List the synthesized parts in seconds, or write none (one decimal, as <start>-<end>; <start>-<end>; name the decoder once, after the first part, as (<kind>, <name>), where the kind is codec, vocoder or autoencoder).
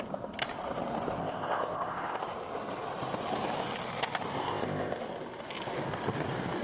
1.2-2.2 (codec, ZipCodec); 4.4-5.0